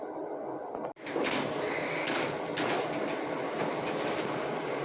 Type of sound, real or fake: real